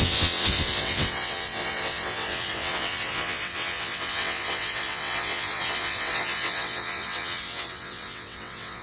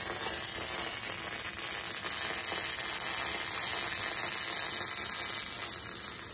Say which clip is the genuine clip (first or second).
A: second